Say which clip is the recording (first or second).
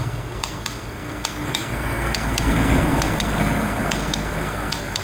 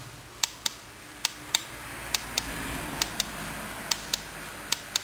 second